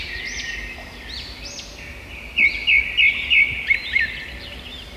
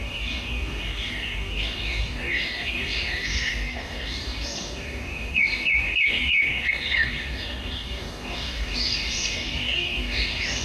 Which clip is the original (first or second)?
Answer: first